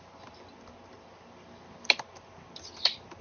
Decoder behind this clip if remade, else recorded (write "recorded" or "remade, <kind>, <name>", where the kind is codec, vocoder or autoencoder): recorded